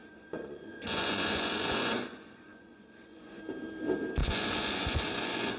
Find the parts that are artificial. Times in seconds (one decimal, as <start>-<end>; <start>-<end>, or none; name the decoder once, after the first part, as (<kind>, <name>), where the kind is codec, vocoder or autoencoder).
0.0-3.4 (vocoder, Vocos); 4.2-5.6